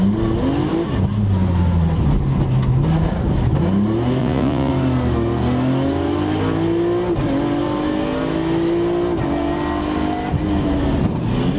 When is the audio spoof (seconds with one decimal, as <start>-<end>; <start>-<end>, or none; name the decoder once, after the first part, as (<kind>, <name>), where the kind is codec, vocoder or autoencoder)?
4.2-4.7 (vocoder, Vocos)